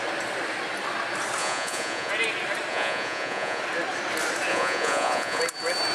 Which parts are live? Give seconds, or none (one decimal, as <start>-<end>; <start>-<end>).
0.0-1.4; 2.1-2.7; 3.6-4.5; 5.4-5.9